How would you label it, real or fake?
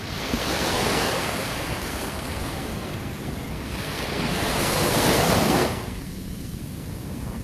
fake